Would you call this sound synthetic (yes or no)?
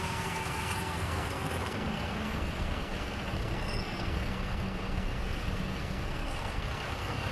yes